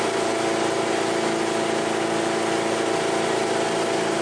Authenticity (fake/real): real